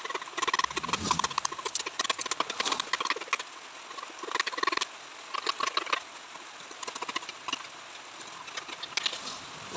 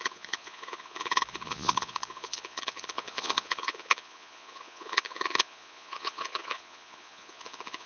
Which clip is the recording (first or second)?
first